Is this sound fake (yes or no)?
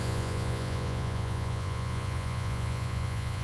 yes